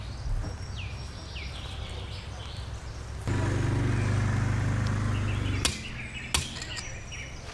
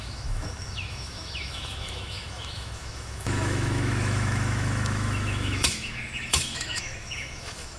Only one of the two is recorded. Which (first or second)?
first